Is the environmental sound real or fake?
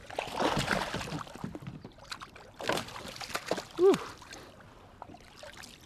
real